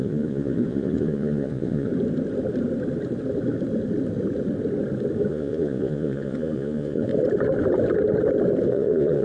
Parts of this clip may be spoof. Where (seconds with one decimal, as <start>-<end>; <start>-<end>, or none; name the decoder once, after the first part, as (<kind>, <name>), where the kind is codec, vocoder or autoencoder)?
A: 0.0-1.9 (vocoder, Vocos); 5.3-7.1; 8.7-9.2